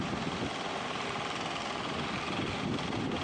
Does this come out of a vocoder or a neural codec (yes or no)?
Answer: no